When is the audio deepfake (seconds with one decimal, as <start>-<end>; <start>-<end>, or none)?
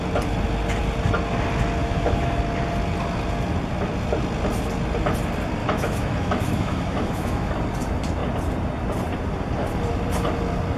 1.8-2.4; 5.6-7.5